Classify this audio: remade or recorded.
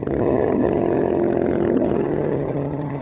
remade